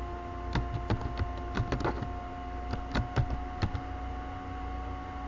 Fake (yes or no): no